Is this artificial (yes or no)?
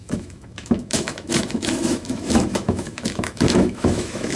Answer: yes